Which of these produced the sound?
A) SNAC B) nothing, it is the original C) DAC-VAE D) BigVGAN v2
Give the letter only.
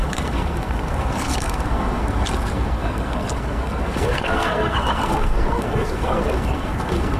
A